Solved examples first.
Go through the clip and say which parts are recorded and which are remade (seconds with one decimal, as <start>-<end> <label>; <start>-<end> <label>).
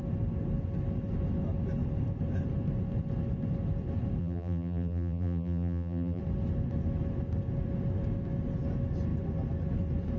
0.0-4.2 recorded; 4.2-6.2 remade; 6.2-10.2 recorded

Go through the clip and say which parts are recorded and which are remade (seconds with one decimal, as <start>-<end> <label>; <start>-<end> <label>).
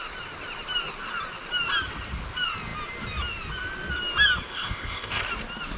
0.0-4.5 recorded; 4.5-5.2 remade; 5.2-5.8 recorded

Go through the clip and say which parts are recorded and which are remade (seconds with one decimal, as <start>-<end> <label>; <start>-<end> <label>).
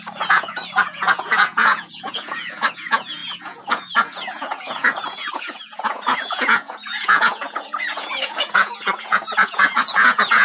0.0-10.4 remade